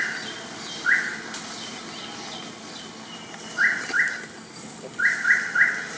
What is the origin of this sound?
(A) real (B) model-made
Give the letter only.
A